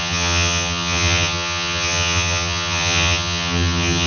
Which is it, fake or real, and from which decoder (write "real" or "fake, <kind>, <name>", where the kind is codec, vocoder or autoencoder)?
fake, vocoder, HiFi-GAN